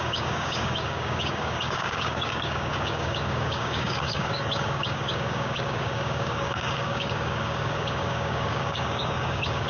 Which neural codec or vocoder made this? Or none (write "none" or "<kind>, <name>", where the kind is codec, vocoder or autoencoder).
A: codec, DAC